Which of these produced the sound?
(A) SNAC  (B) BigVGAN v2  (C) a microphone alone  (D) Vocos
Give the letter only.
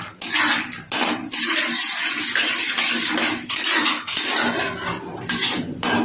C